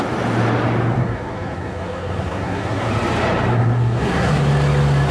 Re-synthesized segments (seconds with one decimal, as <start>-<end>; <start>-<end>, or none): 1.0-2.9; 3.5-4.4